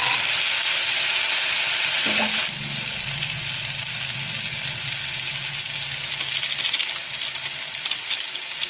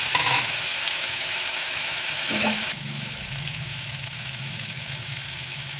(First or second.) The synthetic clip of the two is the second